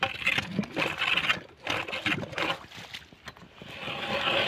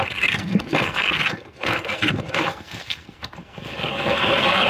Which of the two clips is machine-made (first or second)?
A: second